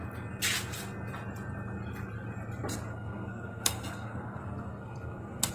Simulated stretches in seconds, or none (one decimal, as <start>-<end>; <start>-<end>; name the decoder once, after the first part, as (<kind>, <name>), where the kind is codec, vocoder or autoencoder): 2.9-5.5 (codec, SNAC)